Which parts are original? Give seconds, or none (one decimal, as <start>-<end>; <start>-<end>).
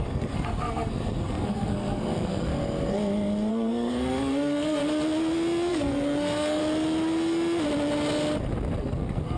2.5-3.5; 4.8-5.7; 6.6-8.8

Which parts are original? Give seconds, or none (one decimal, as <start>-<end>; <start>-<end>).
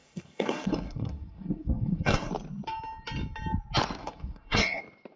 2.3-4.0; 4.8-5.2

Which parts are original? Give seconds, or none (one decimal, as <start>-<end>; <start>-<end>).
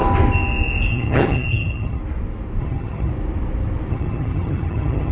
0.0-0.9; 2.0-2.6; 3.1-3.9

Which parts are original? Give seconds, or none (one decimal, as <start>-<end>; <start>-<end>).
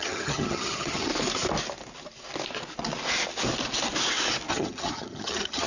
1.1-4.5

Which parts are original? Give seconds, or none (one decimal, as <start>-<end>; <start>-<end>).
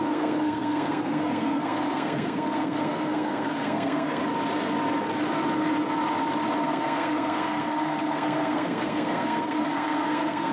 4.2-6.6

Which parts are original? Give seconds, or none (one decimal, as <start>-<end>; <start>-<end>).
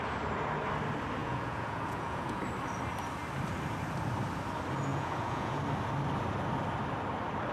0.0-1.2; 2.4-4.9; 5.6-7.5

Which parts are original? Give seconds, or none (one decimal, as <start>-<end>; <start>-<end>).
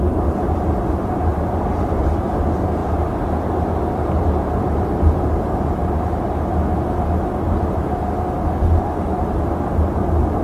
0.0-1.3; 2.1-10.4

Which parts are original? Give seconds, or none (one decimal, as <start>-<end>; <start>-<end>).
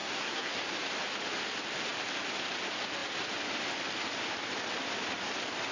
0.6-5.7